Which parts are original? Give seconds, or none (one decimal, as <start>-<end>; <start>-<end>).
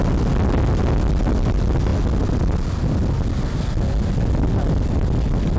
0.0-5.6